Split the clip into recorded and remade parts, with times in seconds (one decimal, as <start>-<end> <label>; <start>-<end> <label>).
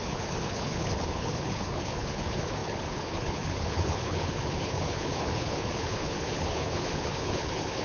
0.0-7.8 remade